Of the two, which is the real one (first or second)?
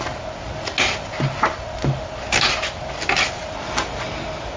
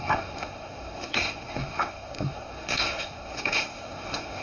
first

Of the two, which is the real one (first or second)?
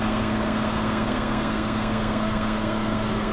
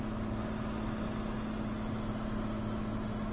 second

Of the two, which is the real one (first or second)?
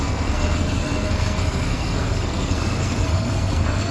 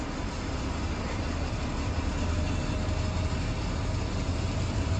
second